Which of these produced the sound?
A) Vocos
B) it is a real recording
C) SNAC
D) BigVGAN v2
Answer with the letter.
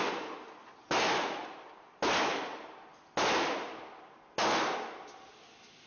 B